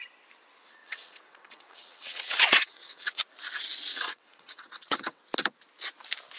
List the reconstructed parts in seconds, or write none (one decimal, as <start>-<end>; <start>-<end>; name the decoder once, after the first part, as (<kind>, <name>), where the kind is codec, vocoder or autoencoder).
0.8-3.2 (vocoder, WaveNeXt); 3.9-5.2